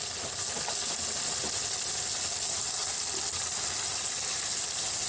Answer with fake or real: real